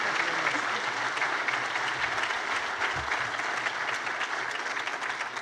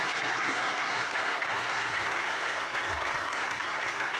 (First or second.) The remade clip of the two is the second